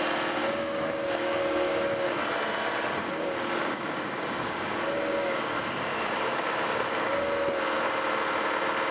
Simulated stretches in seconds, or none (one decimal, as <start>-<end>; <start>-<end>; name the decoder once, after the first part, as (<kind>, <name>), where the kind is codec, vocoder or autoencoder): 0.4-2.2 (codec, DAC); 3.0-7.4